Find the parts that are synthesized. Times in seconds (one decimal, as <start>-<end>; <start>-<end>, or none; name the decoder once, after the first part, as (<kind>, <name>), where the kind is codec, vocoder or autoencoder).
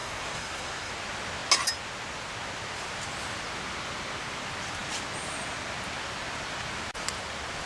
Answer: 0.0-0.9 (codec, SNAC)